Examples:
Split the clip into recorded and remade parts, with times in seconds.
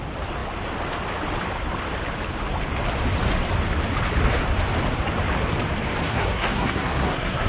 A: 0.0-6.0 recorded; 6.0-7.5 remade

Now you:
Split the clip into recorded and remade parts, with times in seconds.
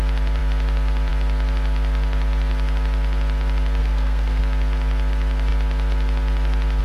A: 0.0-3.8 recorded; 3.8-4.4 remade; 4.4-6.8 recorded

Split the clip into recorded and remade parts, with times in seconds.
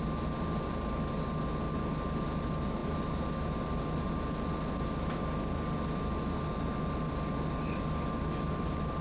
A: 0.0-9.0 recorded